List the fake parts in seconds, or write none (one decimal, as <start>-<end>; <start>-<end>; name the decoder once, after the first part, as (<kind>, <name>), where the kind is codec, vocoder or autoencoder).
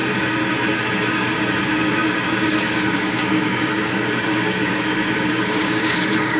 1.1-6.4 (codec, DAC)